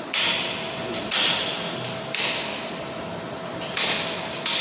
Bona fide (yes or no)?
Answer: yes